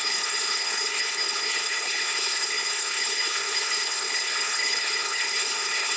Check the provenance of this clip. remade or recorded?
remade